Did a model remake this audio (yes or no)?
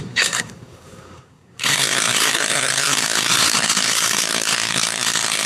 yes